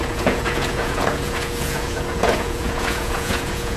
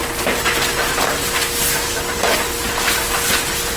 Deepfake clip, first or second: first